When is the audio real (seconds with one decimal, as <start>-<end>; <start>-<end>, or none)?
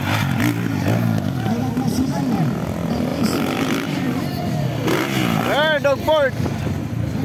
0.0-3.1; 4.4-7.2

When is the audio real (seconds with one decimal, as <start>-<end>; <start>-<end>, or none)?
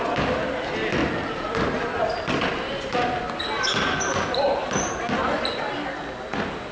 0.0-1.0; 5.0-6.7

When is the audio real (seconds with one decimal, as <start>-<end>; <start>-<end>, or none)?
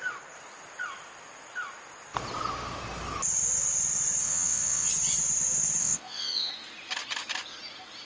0.0-4.2; 4.9-5.8; 6.5-8.0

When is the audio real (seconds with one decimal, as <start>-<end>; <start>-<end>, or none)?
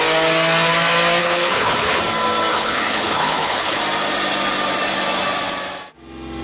0.0-1.2; 2.0-2.5; 3.8-6.4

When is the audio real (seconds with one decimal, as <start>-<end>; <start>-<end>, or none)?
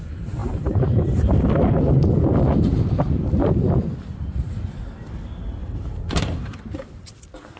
0.0-0.4; 1.4-5.6; 6.6-7.6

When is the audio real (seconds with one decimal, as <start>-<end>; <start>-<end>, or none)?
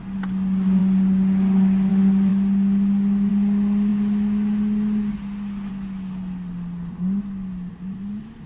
0.0-8.5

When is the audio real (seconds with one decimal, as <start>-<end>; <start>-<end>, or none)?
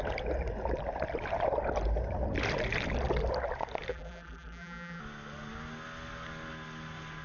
0.0-3.9; 5.0-7.2